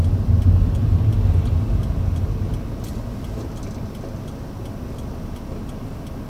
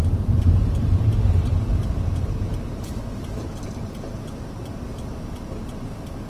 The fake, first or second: second